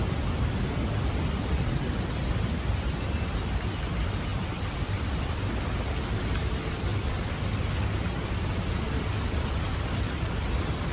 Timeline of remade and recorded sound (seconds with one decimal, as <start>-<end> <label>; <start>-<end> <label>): 0.0-6.9 recorded; 6.9-7.6 remade; 7.6-10.9 recorded